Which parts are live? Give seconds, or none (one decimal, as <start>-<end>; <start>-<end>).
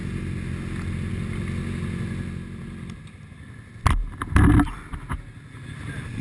0.0-6.2